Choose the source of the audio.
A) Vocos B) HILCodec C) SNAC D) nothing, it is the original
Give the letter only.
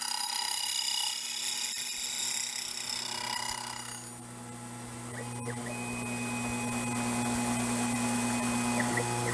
D